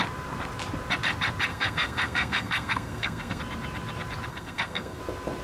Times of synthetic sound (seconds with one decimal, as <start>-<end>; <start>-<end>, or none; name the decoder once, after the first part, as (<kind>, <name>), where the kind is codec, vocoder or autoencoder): 1.5-3.4 (codec, SNAC); 4.3-5.0

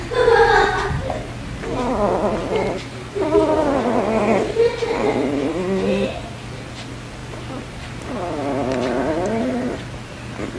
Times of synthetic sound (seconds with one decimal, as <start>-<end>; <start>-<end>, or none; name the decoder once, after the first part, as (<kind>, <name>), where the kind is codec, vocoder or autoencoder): 1.0-5.5 (vocoder, BigVGAN v2); 7.2-9.4

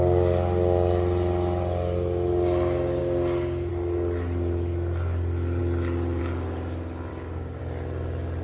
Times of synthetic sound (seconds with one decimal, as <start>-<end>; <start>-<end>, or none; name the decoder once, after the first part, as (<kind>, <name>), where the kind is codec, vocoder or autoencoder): 3.0-3.7 (codec, DAC); 7.1-7.6

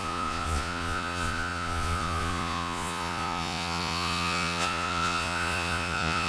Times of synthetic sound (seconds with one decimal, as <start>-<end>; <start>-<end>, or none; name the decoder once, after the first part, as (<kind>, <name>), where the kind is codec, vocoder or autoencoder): 0.0-6.3 (vocoder, Vocos)